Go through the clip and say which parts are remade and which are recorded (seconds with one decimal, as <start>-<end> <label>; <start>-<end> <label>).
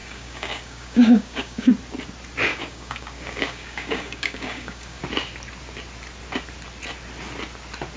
0.0-1.7 remade; 1.7-2.5 recorded; 2.5-5.0 remade; 5.0-8.0 recorded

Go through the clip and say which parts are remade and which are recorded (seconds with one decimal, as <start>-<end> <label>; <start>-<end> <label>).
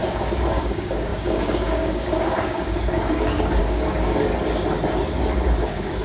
0.0-4.3 remade; 4.3-5.6 recorded; 5.6-6.0 remade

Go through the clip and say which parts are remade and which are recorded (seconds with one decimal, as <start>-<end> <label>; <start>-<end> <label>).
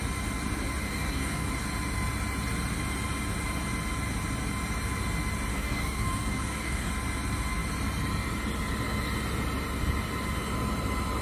0.0-0.8 recorded; 0.8-1.5 remade; 1.5-5.5 recorded; 5.5-6.9 remade; 6.9-11.2 recorded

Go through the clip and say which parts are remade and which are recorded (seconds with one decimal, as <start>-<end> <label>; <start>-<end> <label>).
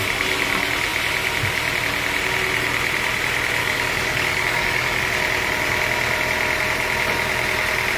0.0-3.6 recorded; 3.6-5.0 remade; 5.0-8.0 recorded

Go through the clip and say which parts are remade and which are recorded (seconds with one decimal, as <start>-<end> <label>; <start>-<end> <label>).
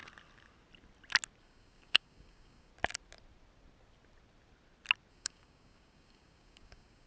0.0-1.4 recorded; 1.4-2.7 remade; 2.7-5.1 recorded; 5.1-7.1 remade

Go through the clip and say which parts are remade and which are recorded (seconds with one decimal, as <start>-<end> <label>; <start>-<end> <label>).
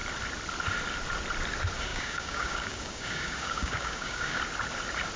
0.0-1.9 recorded; 1.9-4.4 remade; 4.4-5.2 recorded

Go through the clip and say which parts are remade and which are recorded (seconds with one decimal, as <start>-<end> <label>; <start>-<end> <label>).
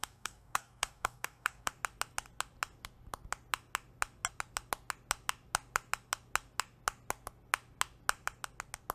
0.0-1.7 remade; 1.7-8.9 recorded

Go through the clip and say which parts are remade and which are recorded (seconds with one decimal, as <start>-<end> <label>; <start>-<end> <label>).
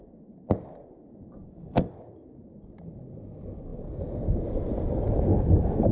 0.0-1.4 recorded; 1.4-1.9 remade; 1.9-5.9 recorded